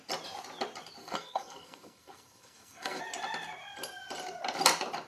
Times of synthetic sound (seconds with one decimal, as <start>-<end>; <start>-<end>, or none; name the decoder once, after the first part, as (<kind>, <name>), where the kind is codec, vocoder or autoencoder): 1.0-3.0 (codec, SNAC)